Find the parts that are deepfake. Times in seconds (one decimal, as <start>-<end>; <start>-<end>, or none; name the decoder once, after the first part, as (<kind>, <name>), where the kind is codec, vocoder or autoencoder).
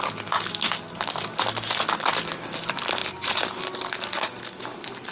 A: none